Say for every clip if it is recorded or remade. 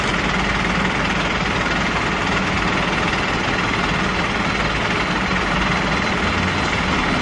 recorded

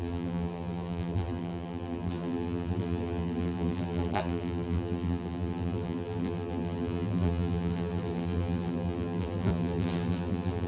remade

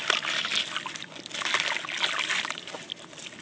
recorded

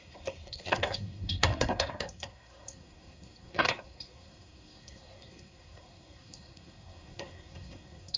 remade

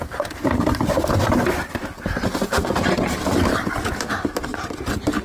recorded